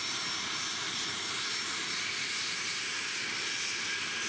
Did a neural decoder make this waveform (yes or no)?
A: no